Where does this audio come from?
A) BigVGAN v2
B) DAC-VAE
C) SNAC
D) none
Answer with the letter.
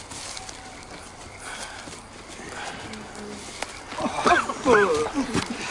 D